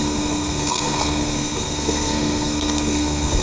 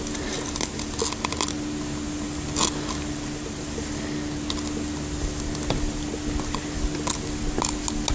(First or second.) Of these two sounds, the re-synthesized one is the first